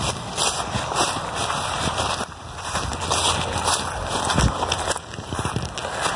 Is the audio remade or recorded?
recorded